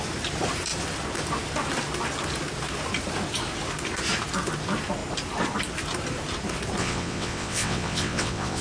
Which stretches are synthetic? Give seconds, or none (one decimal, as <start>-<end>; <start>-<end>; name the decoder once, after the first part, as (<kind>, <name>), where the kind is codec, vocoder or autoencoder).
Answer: 6.8-8.6 (vocoder, WaveNeXt)